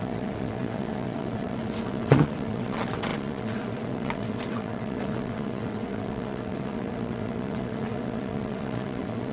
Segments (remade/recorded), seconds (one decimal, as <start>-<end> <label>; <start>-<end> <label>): 0.0-9.3 remade